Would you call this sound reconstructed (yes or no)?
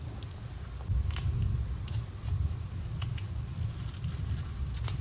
no